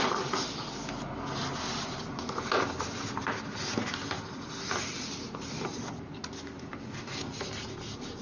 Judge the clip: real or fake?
real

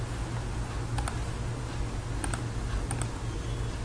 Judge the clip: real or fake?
real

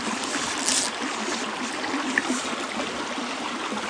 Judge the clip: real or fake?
real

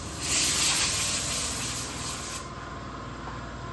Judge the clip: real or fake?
real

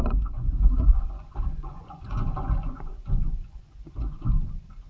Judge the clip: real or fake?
fake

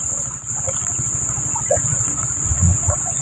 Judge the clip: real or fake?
fake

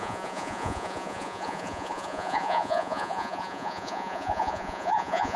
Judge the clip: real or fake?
fake